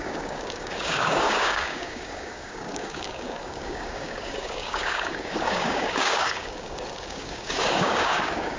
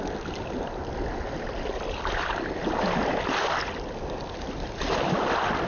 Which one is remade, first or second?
first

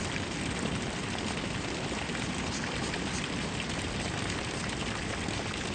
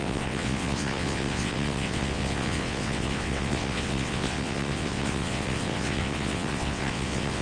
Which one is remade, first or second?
second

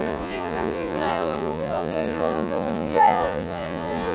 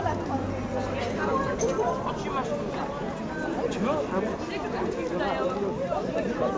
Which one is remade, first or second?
first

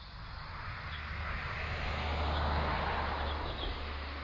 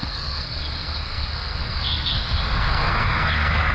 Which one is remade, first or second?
second